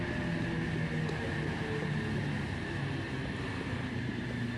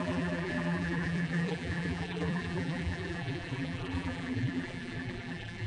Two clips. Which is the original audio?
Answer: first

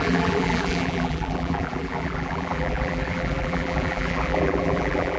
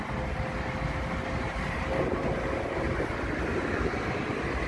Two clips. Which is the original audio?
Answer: second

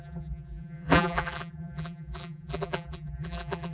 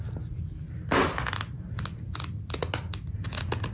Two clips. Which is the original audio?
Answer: second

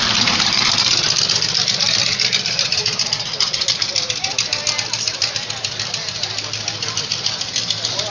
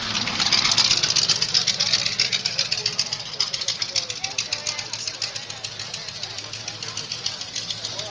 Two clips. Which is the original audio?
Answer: second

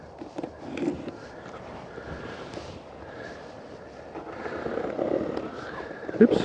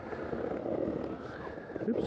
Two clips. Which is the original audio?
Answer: second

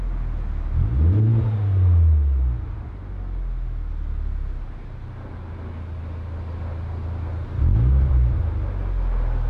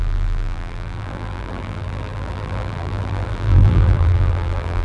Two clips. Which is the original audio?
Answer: first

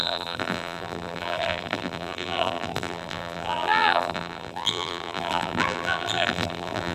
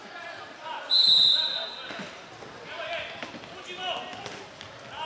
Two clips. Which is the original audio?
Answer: second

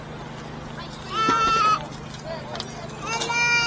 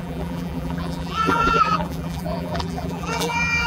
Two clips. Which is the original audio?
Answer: first